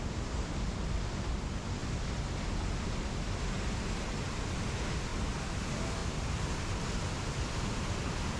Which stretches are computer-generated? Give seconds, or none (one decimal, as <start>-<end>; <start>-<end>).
5.1-5.6; 6.0-6.8